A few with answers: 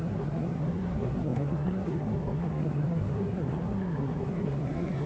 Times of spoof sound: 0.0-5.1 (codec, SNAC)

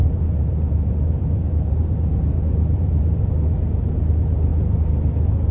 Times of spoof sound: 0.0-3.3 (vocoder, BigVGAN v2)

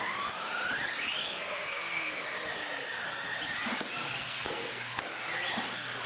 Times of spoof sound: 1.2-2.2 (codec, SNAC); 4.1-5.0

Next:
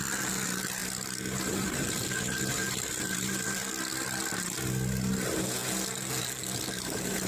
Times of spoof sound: none

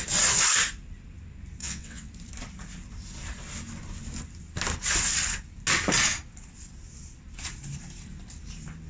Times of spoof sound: 1.6-2.1 (vocoder, WaveNeXt)